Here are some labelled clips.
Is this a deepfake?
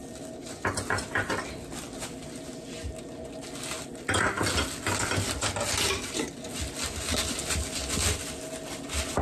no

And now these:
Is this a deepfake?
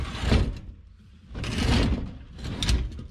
no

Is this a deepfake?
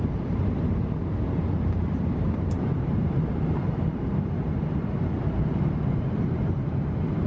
yes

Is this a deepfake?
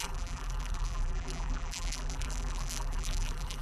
yes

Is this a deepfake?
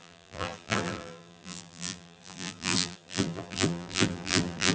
yes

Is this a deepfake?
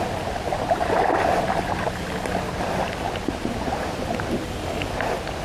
no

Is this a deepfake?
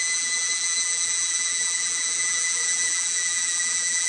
yes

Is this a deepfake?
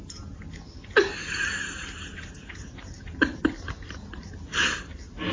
no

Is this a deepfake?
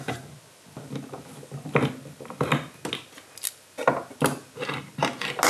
no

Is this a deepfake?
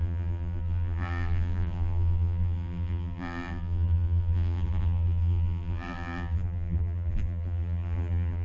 yes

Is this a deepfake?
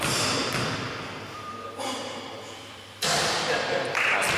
yes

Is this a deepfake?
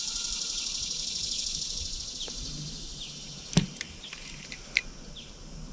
yes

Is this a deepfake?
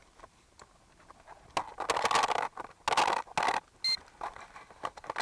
no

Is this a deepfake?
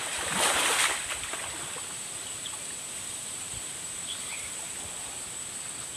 yes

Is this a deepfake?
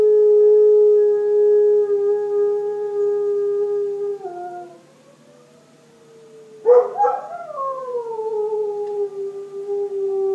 no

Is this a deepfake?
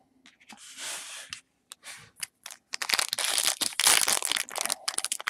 no